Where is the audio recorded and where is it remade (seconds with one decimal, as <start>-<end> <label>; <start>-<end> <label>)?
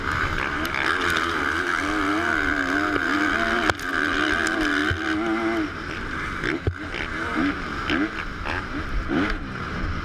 0.0-10.0 recorded